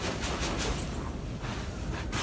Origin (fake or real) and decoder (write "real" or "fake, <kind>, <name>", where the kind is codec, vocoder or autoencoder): real